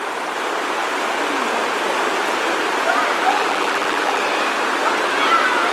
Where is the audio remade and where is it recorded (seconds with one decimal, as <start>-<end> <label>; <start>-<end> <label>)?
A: 0.0-3.2 recorded; 3.2-4.2 remade; 4.2-5.7 recorded